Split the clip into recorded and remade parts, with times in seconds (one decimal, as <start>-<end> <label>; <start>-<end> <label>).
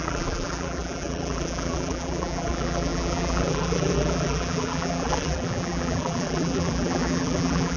0.0-7.8 remade